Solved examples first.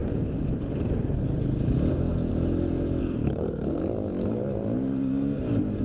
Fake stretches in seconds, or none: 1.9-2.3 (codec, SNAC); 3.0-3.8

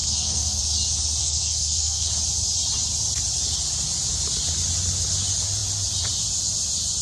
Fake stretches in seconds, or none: 0.0-0.6 (codec, SNAC); 1.2-2.1

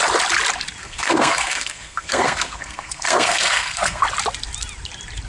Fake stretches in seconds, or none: 0.8-4.0 (codec, SNAC)

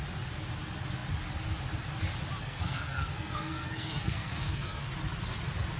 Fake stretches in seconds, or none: 2.4-4.9 (codec, SNAC)